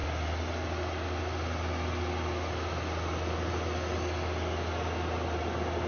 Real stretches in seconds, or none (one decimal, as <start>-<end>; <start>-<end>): 0.0-5.9